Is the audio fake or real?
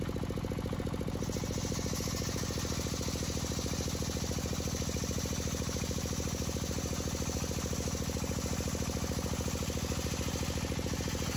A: real